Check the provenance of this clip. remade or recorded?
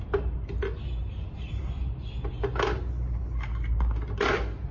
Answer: recorded